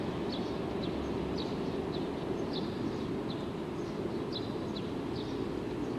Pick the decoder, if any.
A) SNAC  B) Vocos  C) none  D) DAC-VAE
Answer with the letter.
C